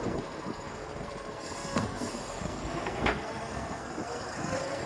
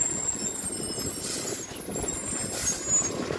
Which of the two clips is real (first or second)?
second